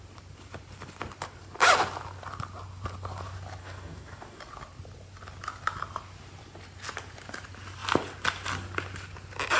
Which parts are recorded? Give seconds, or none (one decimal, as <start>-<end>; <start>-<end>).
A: 0.0-3.6; 4.4-9.6